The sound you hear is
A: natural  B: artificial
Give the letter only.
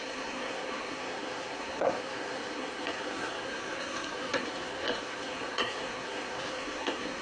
B